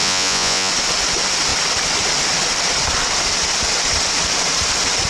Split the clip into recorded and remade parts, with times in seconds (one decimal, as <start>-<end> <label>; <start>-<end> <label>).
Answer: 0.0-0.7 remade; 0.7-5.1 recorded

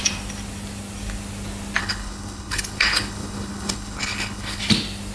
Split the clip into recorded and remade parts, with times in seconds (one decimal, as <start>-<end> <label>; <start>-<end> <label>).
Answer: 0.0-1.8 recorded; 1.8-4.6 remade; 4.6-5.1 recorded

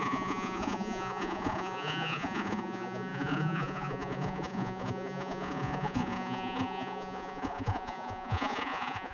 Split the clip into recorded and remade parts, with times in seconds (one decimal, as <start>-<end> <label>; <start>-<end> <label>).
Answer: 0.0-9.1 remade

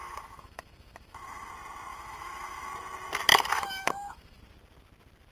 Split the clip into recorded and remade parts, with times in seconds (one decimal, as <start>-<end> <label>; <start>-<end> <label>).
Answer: 0.0-1.5 remade; 1.5-1.9 recorded; 1.9-2.7 remade; 2.7-3.3 recorded; 3.3-4.4 remade; 4.4-5.3 recorded

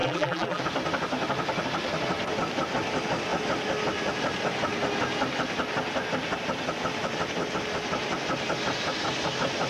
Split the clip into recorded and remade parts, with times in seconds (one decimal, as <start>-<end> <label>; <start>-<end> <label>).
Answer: 0.0-0.6 remade; 0.6-9.7 recorded

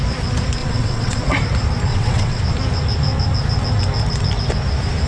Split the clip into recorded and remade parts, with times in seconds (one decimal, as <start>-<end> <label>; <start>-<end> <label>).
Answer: 0.0-0.6 recorded; 0.6-1.2 remade; 1.2-1.9 recorded; 1.9-2.4 remade; 2.4-5.1 recorded

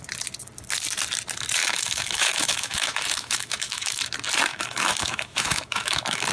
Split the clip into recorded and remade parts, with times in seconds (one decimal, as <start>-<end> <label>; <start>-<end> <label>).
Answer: 0.0-1.6 recorded; 1.6-4.0 remade; 4.0-4.5 recorded; 4.5-6.3 remade